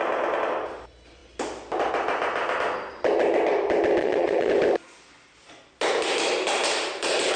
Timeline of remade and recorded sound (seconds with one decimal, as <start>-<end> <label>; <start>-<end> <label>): 0.0-4.0 recorded; 4.0-4.5 remade; 4.5-7.4 recorded